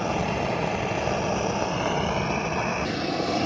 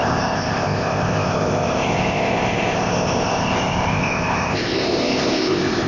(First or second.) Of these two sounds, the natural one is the first